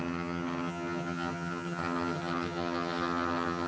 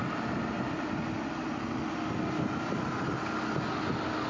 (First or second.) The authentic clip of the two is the second